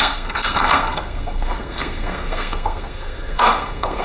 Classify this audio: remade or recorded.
remade